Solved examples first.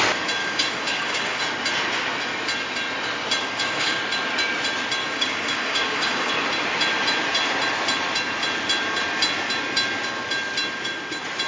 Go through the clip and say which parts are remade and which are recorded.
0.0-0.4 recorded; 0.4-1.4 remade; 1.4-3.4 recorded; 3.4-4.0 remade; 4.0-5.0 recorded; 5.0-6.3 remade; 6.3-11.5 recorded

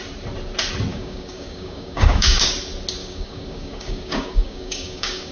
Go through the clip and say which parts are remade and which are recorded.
0.0-0.9 recorded; 0.9-2.5 remade; 2.5-3.0 recorded; 3.0-5.3 remade

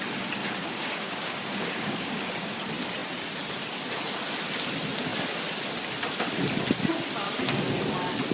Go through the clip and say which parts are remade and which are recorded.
0.0-0.4 recorded; 0.4-2.6 remade; 2.6-8.3 recorded

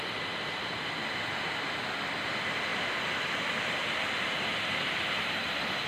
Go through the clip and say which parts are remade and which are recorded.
0.0-5.9 recorded

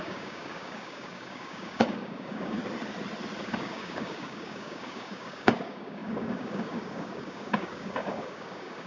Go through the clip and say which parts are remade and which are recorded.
0.0-2.6 remade; 2.6-3.4 recorded; 3.4-8.9 remade

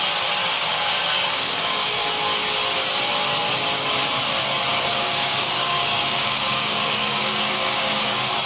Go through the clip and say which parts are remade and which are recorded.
0.0-0.4 recorded; 0.4-2.1 remade; 2.1-4.7 recorded; 4.7-8.1 remade; 8.1-8.5 recorded